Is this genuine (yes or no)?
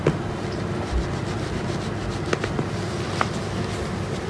yes